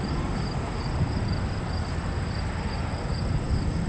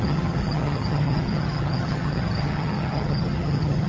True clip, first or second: first